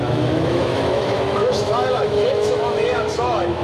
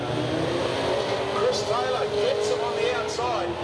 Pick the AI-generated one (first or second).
first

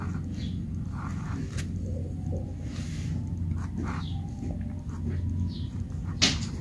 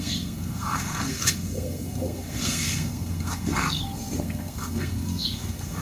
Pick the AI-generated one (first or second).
second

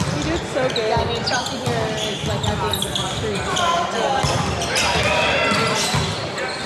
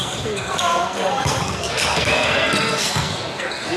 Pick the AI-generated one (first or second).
second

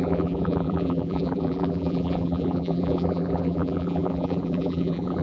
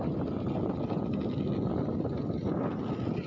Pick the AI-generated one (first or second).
first